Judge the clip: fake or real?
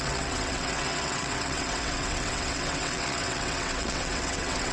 fake